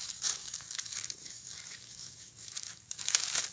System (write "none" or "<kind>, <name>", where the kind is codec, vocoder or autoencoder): codec, DAC